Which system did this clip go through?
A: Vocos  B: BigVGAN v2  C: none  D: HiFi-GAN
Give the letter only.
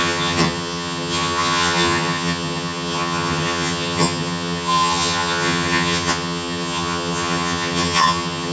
D